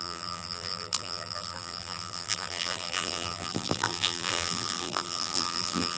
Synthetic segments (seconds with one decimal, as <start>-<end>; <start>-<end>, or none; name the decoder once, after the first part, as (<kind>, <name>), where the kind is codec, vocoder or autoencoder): 0.0-6.0 (vocoder, BigVGAN v2)